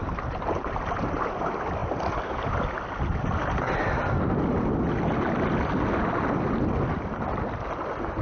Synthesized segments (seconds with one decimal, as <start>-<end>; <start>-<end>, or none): none